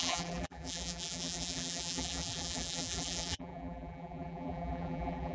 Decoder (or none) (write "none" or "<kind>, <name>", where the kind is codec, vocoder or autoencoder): vocoder, BigVGAN v2